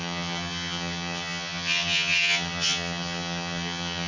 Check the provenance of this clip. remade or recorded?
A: remade